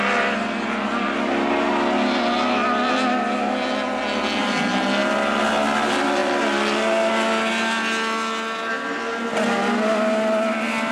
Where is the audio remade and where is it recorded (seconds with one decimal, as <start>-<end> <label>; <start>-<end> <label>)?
0.0-10.9 recorded